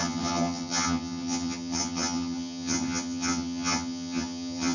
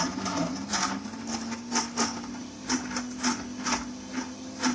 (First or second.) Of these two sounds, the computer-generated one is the first